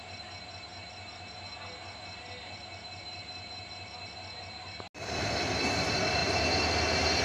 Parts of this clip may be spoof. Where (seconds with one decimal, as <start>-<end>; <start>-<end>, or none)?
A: none